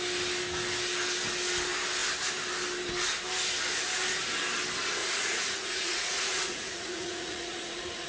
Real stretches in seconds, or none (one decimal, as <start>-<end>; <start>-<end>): 0.0-5.0